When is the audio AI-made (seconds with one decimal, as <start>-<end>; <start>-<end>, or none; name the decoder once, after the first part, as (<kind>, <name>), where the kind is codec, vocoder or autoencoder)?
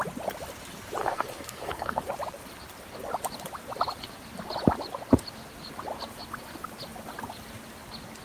1.0-2.0 (codec, SNAC)